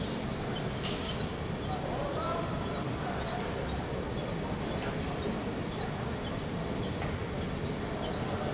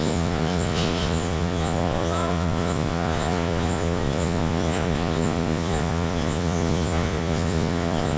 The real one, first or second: first